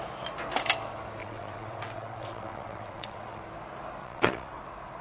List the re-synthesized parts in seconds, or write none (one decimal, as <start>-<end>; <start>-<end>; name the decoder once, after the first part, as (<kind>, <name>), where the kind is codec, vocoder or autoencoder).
1.2-3.4 (vocoder, WaveNeXt); 4.0-4.6